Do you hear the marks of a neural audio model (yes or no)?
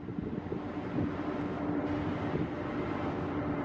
no